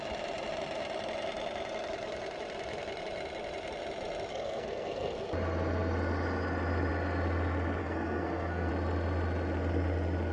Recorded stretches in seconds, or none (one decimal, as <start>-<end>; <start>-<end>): 0.0-4.3; 5.3-7.8; 8.7-10.3